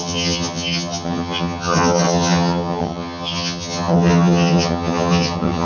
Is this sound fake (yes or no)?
yes